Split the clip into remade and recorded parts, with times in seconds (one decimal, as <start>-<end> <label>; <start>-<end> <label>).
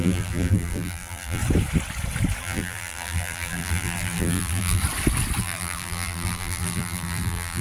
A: 0.0-1.4 remade; 1.4-2.4 recorded; 2.4-4.8 remade; 4.8-5.4 recorded; 5.4-7.6 remade